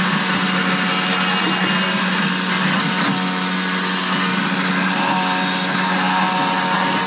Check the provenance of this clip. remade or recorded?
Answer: recorded